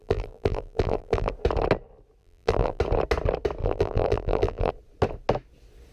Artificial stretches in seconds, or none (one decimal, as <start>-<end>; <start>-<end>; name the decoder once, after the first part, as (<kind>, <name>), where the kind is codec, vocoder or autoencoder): 0.0-1.3 (vocoder, BigVGAN v2); 2.2-2.8; 3.6-4.7

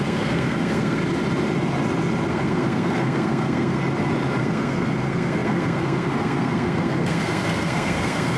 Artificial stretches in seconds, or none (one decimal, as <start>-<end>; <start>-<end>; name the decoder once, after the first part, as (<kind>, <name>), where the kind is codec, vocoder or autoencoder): 0.0-1.0 (codec, SNAC); 2.3-3.8; 4.4-8.4

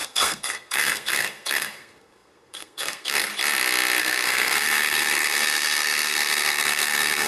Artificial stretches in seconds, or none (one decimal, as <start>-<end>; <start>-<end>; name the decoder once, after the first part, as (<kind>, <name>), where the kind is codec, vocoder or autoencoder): 0.0-3.3 (codec, SNAC); 4.0-7.3

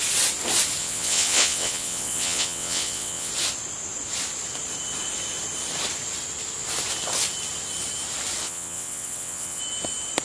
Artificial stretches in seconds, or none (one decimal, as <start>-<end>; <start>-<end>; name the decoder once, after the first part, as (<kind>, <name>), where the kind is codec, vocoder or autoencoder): 0.8-3.3 (vocoder, WaveNeXt); 8.4-9.6

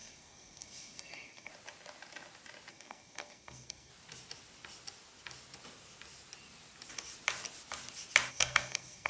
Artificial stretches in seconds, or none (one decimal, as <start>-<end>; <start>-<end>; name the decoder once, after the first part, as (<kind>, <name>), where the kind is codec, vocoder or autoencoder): 0.0-1.5 (codec, SNAC); 2.7-3.9; 8.3-9.1

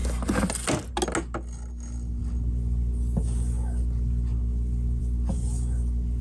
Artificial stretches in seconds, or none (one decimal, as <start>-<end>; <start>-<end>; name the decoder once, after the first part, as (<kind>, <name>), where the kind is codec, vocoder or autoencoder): none

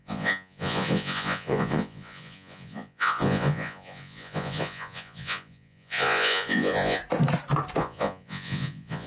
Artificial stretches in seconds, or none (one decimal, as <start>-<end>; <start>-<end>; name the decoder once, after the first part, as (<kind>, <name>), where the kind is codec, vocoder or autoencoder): 0.0-7.0 (vocoder, Vocos); 7.8-9.1